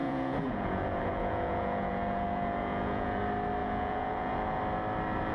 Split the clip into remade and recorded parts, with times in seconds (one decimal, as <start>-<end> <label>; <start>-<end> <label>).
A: 0.0-3.2 remade; 3.2-3.6 recorded; 3.6-4.6 remade; 4.6-5.3 recorded